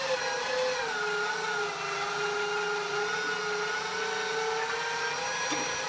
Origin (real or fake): real